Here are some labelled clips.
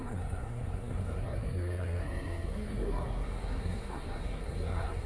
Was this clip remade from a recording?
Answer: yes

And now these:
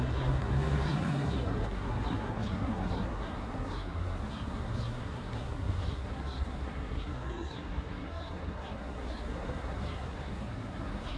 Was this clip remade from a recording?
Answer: yes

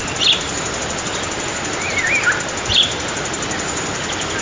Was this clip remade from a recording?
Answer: no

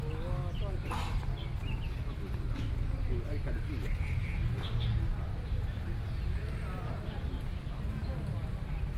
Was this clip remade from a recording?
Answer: no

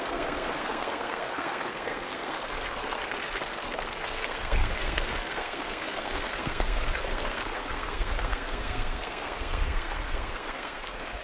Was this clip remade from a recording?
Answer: yes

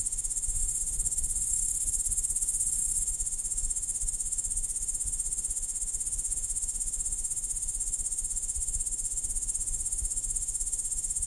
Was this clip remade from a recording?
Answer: yes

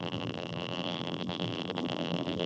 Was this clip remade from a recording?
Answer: yes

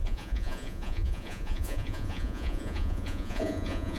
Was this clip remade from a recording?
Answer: yes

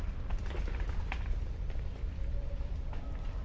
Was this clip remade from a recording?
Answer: no